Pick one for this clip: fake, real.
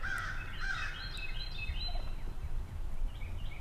fake